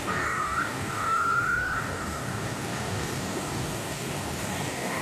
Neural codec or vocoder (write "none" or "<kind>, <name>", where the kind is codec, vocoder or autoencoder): codec, DAC